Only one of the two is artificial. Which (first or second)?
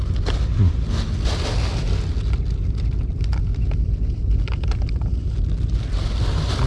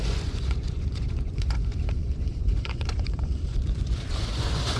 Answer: second